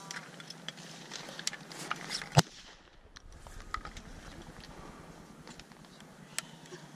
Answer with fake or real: real